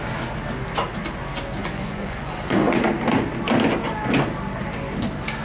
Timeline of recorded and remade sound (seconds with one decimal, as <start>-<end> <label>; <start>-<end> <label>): 0.0-1.6 recorded; 1.6-2.9 remade; 2.9-5.4 recorded